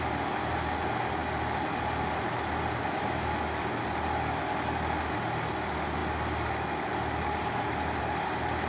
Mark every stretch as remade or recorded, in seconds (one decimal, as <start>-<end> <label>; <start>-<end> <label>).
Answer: 0.0-8.7 recorded